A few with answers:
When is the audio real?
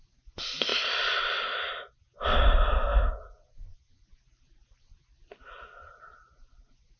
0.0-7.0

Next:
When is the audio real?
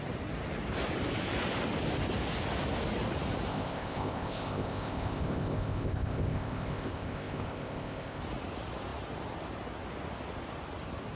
0.0-3.5; 8.2-11.2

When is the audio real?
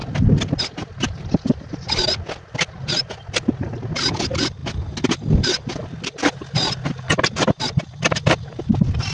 0.0-9.1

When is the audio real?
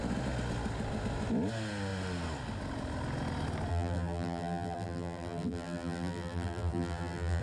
0.0-3.7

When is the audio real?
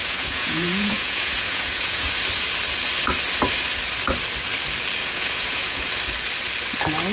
2.1-5.0; 5.9-7.1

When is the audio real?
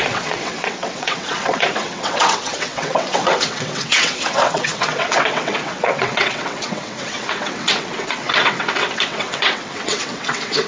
none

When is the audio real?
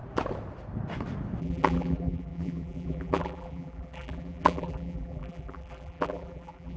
0.0-1.4